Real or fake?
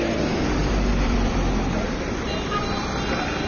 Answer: fake